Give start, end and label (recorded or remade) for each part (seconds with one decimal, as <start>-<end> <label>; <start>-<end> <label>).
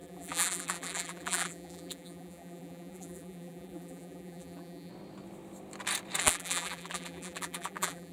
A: 0.0-4.9 remade; 4.9-6.2 recorded; 6.2-8.1 remade